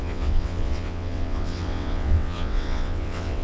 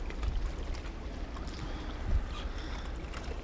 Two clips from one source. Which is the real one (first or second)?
second